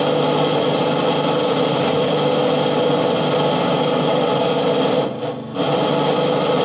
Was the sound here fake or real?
real